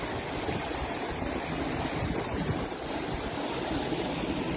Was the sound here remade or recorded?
recorded